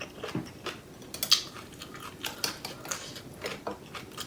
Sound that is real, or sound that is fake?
real